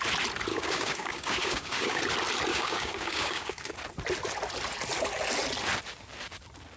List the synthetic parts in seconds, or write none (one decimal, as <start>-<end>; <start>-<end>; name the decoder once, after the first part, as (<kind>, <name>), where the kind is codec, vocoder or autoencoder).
0.5-2.0 (codec, DAC); 2.5-3.7